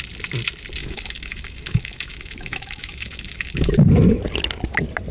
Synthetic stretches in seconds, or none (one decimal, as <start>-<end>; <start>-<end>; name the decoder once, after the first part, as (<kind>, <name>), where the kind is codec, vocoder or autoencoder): 0.8-3.9 (autoencoder, DAC-VAE)